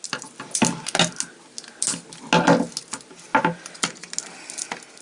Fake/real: real